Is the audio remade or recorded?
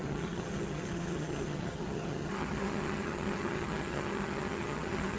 remade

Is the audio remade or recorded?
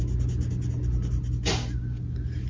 recorded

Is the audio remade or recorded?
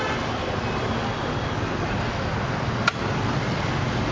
recorded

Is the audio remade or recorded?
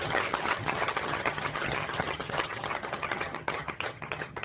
remade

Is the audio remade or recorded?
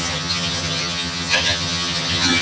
remade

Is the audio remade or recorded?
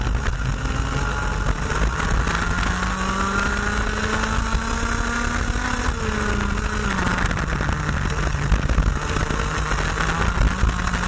recorded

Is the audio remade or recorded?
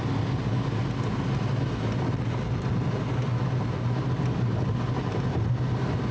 recorded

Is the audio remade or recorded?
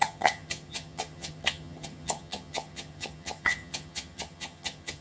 remade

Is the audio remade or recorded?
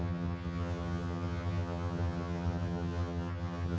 remade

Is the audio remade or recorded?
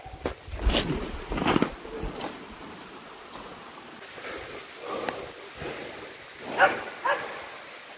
recorded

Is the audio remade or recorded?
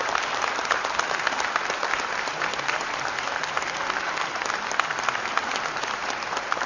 recorded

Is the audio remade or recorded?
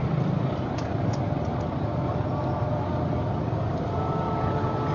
recorded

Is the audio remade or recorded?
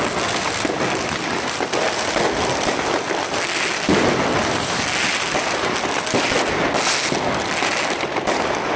recorded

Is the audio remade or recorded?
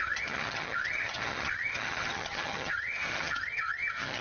remade